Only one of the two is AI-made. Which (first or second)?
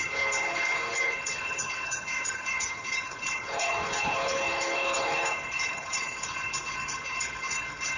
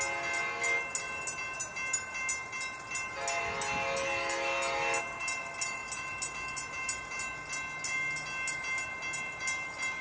first